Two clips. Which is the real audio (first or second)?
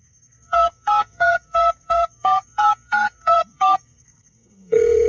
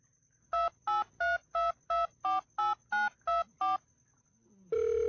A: second